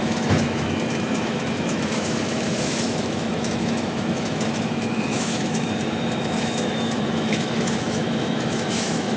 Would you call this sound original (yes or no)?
no